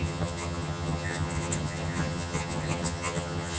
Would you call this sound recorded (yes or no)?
no